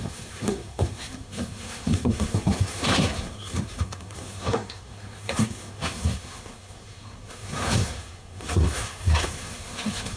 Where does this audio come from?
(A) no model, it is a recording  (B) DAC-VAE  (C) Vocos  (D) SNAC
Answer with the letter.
D